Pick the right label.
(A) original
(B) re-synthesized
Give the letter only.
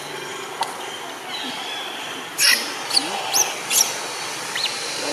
A